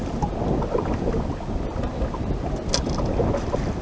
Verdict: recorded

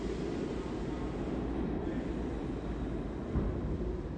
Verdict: recorded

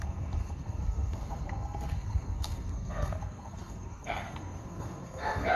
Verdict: remade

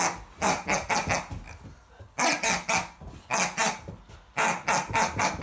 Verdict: recorded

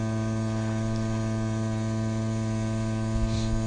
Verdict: recorded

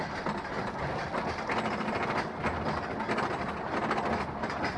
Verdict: recorded